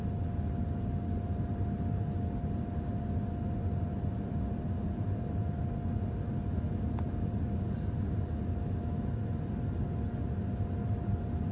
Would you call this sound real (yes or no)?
yes